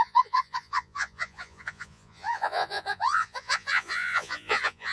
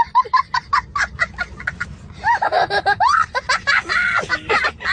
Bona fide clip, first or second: second